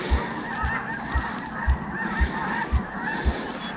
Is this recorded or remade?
recorded